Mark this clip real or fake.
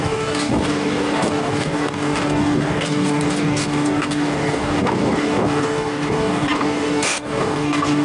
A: fake